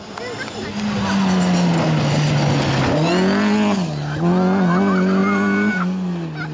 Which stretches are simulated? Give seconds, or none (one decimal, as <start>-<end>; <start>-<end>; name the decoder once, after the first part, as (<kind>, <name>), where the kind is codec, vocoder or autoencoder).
none

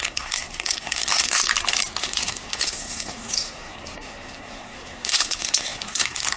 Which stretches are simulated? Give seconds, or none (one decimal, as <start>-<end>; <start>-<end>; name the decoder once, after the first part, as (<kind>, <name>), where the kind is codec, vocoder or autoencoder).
0.0-1.5 (codec, SNAC); 2.0-6.4

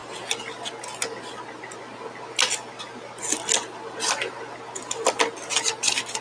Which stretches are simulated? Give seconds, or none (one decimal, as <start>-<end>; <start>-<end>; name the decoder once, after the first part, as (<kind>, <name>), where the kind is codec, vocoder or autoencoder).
none

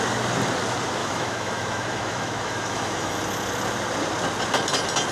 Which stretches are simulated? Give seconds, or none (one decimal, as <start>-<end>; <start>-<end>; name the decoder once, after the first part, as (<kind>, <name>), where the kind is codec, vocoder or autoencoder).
1.0-3.2 (autoencoder, DAC-VAE)

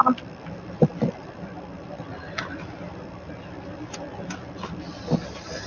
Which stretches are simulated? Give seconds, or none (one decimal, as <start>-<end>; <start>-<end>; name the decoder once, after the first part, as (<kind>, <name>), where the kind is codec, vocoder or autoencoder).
none